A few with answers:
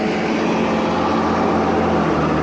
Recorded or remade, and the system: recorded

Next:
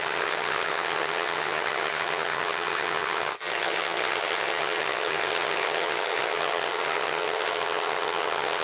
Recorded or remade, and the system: remade, vocoder, HiFi-GAN